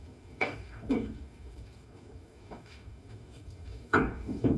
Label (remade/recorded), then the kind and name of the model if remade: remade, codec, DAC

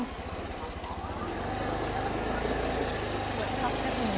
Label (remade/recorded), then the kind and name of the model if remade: recorded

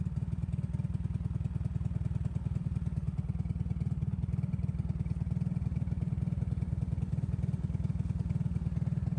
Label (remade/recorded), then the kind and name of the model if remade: recorded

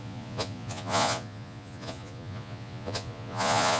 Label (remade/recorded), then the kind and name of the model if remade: remade, vocoder, Vocos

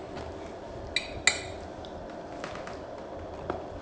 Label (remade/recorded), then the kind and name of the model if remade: recorded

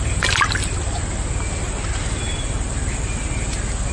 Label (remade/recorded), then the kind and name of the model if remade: remade, vocoder, BigVGAN v2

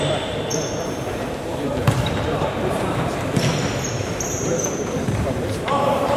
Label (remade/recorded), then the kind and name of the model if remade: remade, vocoder, BigVGAN v2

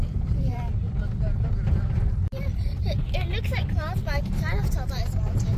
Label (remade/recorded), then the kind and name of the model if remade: remade, vocoder, BigVGAN v2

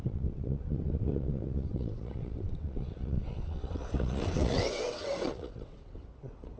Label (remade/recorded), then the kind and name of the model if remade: remade, vocoder, WaveNeXt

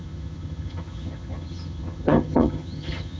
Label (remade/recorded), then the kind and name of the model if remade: remade, vocoder, HiFi-GAN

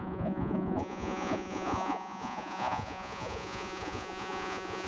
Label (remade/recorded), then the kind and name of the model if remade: remade, vocoder, Vocos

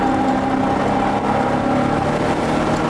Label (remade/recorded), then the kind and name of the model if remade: recorded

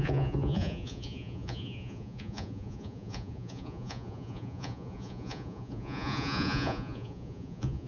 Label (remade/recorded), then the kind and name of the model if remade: remade, vocoder, Vocos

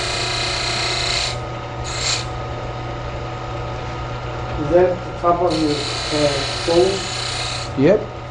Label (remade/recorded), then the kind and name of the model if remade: recorded